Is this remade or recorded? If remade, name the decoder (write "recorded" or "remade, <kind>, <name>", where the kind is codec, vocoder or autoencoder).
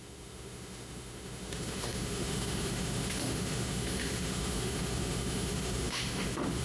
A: remade, autoencoder, DAC-VAE